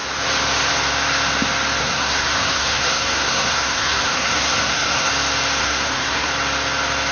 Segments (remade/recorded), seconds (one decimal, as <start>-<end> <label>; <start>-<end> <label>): 0.0-1.8 recorded; 1.8-5.1 remade; 5.1-5.6 recorded; 5.6-6.3 remade; 6.3-7.1 recorded